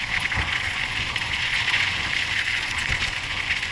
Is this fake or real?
fake